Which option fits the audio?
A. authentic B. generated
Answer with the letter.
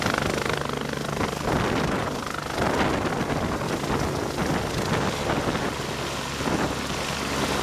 A